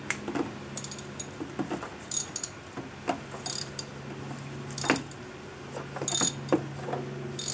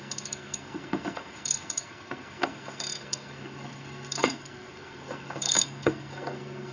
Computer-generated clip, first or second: second